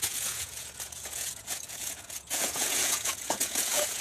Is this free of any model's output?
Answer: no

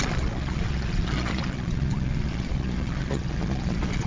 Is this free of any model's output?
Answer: no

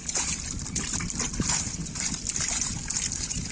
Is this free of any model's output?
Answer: yes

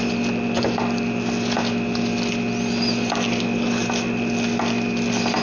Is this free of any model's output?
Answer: yes